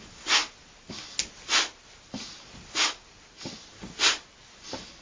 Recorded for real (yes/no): yes